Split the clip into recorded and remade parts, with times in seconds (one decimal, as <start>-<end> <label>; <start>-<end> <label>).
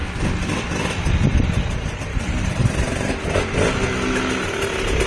0.0-2.1 recorded; 2.1-3.1 remade; 3.1-5.1 recorded